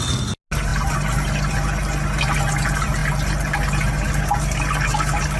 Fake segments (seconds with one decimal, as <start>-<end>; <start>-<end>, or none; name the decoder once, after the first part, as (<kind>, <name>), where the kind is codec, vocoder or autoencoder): none